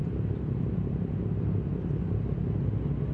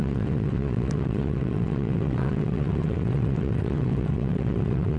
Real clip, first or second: first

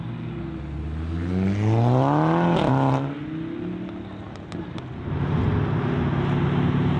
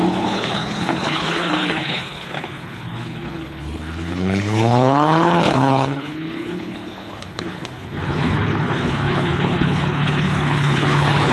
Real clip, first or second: first